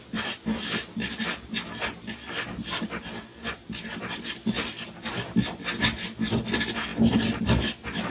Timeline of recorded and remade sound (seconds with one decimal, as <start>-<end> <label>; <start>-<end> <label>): 0.0-8.1 recorded